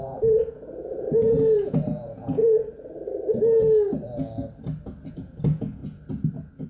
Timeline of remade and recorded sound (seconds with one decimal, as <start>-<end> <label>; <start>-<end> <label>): 0.0-2.4 remade; 2.4-5.1 recorded; 5.1-5.8 remade; 5.8-6.3 recorded; 6.3-6.7 remade